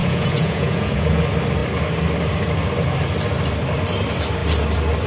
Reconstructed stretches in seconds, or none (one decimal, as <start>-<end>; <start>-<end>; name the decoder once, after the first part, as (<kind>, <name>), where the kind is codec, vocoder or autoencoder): 0.0-1.2 (vocoder, Vocos)